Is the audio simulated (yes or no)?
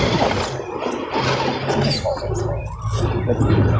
no